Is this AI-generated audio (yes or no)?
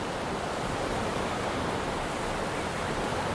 no